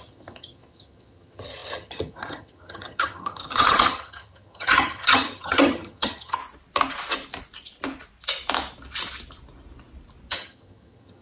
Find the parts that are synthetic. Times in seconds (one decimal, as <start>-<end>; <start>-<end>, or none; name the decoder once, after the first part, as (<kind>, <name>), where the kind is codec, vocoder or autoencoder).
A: 0.0-6.4 (vocoder, HiFi-GAN); 10.3-11.2